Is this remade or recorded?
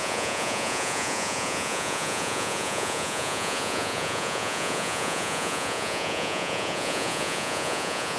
remade